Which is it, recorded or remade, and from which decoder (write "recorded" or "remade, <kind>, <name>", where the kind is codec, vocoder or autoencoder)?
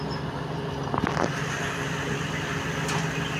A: recorded